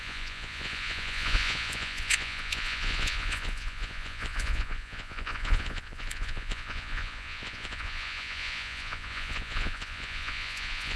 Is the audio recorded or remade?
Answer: remade